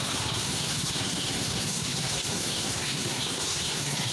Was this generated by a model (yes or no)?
yes